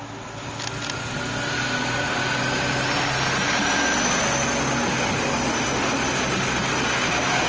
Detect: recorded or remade recorded